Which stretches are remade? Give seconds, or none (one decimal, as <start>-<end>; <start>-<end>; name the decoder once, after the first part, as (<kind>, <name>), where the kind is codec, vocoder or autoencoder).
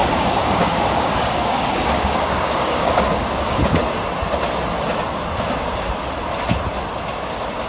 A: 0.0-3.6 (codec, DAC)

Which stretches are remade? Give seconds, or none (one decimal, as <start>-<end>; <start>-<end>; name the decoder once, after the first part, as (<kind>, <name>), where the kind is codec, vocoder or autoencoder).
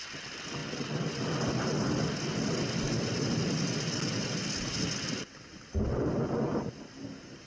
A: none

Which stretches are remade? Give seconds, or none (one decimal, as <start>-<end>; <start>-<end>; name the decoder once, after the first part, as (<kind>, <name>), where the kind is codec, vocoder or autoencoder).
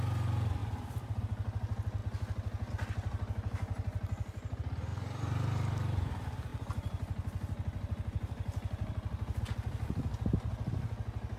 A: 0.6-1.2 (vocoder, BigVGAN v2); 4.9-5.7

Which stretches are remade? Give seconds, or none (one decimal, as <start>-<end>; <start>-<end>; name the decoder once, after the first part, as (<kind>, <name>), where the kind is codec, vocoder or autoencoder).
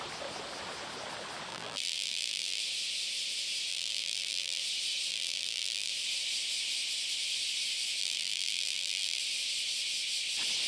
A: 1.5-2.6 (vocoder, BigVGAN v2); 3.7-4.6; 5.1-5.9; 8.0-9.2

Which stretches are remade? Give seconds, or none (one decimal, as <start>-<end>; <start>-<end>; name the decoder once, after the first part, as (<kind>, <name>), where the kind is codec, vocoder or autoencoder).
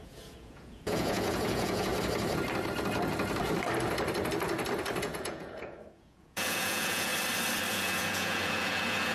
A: 0.0-1.9 (vocoder, Vocos); 5.0-7.1; 7.7-9.1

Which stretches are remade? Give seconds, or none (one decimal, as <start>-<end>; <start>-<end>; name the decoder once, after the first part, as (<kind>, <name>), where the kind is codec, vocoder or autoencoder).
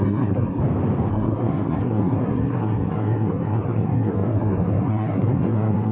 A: 0.0-0.6 (codec, SNAC); 1.1-5.9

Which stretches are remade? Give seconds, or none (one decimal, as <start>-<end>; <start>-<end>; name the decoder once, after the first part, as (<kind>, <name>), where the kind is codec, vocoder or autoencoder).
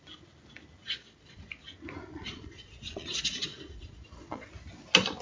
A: 0.8-1.5 (vocoder, Vocos); 2.1-4.5